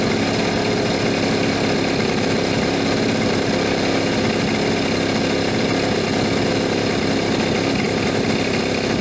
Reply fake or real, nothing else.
real